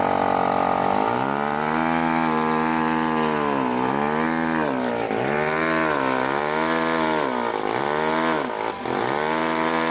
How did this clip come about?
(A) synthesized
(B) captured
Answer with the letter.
B